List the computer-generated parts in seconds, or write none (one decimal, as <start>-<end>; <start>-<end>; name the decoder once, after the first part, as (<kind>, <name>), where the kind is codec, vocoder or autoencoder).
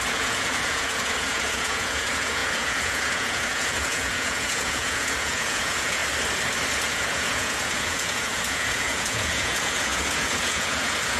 0.0-6.0 (vocoder, Vocos); 6.7-11.2